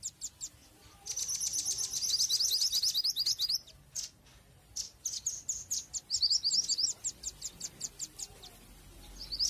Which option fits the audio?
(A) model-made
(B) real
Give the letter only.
B